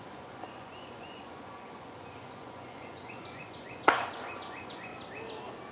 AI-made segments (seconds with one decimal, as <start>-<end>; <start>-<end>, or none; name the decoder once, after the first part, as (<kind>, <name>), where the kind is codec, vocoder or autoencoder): 0.0-4.9 (vocoder, Vocos)